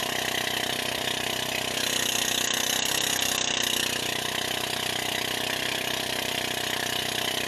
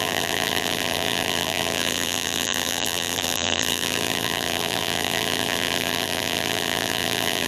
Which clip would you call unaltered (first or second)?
first